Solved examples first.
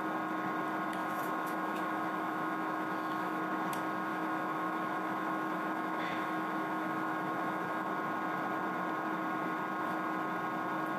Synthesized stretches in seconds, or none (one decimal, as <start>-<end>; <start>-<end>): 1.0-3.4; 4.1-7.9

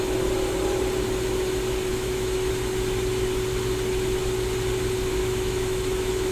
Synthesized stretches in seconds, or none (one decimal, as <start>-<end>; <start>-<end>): 1.9-2.5; 5.2-6.3

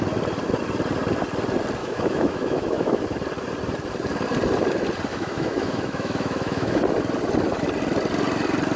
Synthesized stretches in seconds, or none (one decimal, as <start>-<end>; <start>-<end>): 1.8-3.0; 5.1-6.8

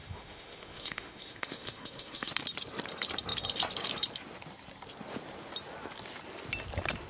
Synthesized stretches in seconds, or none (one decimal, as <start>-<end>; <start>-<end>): 0.0-2.3